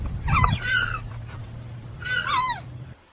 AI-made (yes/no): yes